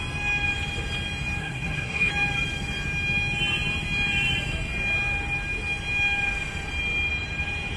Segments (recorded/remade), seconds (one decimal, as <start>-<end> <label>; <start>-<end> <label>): 0.0-1.4 recorded; 1.4-2.1 remade; 2.1-7.8 recorded